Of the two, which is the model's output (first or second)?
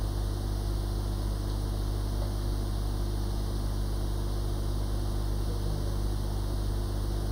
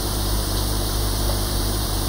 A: second